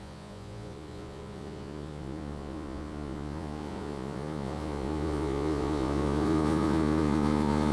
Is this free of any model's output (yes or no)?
no